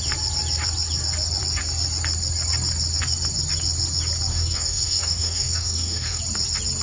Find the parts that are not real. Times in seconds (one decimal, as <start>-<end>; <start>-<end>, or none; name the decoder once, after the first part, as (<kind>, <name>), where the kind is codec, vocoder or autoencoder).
4.3-6.2 (codec, DAC)